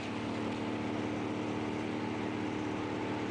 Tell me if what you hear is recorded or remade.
recorded